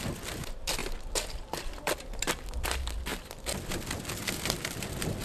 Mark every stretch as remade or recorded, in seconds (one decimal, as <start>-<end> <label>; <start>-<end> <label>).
0.0-5.2 recorded

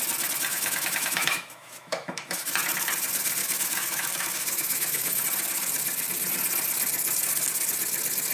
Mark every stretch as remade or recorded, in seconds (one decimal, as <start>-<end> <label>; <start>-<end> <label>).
0.0-0.5 recorded; 0.5-2.5 remade; 2.5-3.4 recorded; 3.4-5.2 remade; 5.2-8.3 recorded

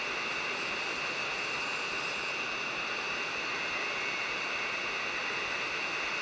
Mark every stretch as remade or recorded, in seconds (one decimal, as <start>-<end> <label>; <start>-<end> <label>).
0.0-6.2 remade

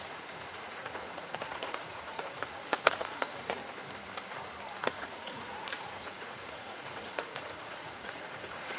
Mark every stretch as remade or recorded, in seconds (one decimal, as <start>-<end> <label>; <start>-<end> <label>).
0.0-3.6 remade; 3.6-4.8 recorded; 4.8-8.8 remade

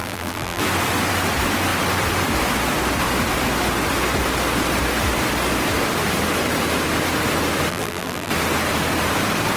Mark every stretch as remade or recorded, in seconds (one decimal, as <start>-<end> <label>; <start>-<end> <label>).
0.0-0.6 remade; 0.6-7.7 recorded; 7.7-8.3 remade; 8.3-9.6 recorded